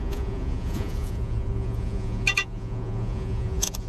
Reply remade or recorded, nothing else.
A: remade